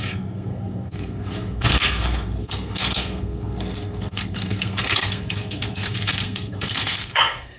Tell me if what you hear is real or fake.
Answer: fake